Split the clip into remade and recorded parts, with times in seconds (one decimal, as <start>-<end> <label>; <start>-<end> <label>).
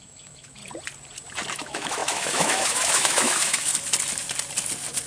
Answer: 0.0-0.6 remade; 0.6-1.5 recorded; 1.5-3.7 remade; 3.7-5.1 recorded